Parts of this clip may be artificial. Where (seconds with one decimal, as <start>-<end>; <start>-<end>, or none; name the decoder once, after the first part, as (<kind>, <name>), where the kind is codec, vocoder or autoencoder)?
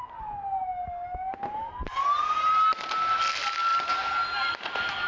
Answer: none